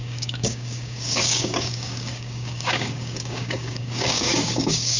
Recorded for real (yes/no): no